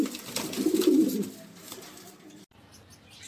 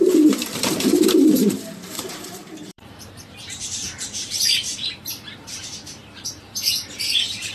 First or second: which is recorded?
first